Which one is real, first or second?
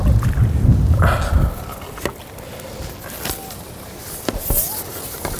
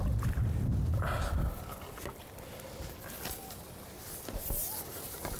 first